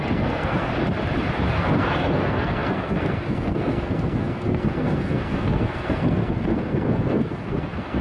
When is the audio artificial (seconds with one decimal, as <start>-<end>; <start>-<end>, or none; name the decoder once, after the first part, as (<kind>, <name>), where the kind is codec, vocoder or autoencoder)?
0.0-0.7 (codec, SNAC); 1.5-8.0